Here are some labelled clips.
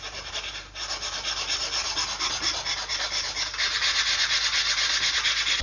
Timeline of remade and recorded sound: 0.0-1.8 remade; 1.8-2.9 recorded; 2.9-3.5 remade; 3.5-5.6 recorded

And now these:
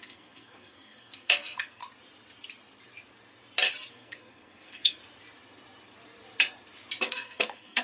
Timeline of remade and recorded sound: 0.0-1.8 remade; 1.8-3.9 recorded; 3.9-5.0 remade; 5.0-7.0 recorded; 7.0-7.8 remade

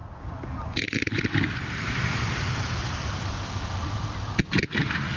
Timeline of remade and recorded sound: 0.0-2.8 remade; 2.8-5.2 recorded

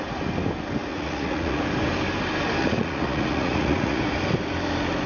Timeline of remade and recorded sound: 0.0-0.9 recorded; 0.9-1.6 remade; 1.6-2.6 recorded; 2.6-4.0 remade; 4.0-5.1 recorded